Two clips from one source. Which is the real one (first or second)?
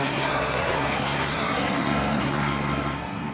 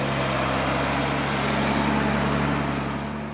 second